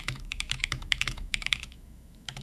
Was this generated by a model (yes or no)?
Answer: yes